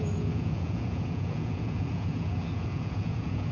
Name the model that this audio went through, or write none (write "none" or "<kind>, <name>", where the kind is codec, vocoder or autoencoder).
vocoder, Vocos